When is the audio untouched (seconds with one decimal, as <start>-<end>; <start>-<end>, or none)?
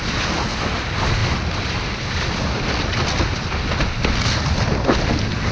0.0-5.5